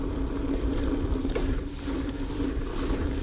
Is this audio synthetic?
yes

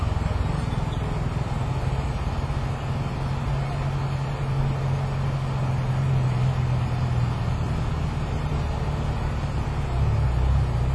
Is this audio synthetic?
no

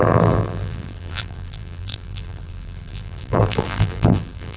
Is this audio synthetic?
yes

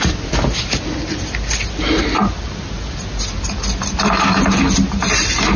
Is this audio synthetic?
no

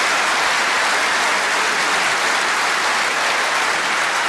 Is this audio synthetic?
no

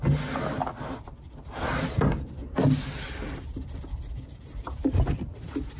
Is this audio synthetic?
no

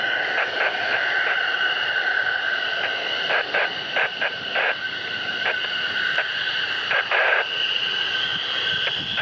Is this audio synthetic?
no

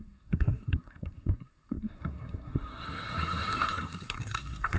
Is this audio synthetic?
yes